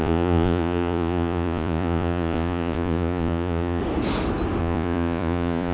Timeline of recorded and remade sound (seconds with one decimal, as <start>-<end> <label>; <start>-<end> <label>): 0.0-3.8 remade; 3.8-4.6 recorded; 4.6-5.7 remade